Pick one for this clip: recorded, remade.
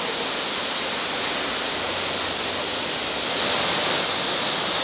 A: recorded